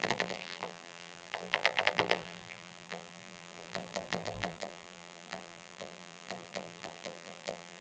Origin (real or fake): fake